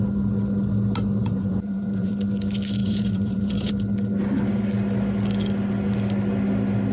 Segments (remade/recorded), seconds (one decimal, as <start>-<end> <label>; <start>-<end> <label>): 0.0-1.2 recorded; 1.2-2.1 remade; 2.1-2.8 recorded; 2.8-3.7 remade; 3.7-6.9 recorded